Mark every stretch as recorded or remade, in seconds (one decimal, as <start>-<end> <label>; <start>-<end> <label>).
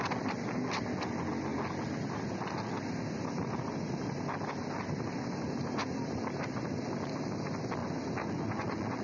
0.0-7.8 recorded; 7.8-9.0 remade